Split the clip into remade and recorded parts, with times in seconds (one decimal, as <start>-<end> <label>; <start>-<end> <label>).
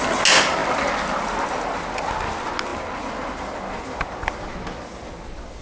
0.0-5.6 recorded